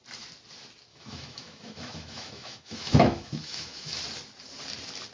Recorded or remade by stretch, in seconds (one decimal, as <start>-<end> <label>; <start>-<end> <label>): 0.0-0.9 recorded; 0.9-4.0 remade; 4.0-5.1 recorded